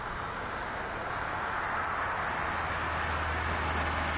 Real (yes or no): yes